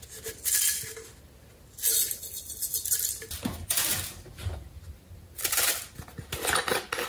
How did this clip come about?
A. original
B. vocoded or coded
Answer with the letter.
A